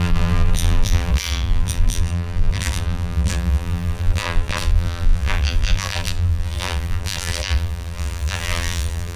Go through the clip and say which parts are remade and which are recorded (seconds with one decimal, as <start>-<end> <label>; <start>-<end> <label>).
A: 0.0-9.2 remade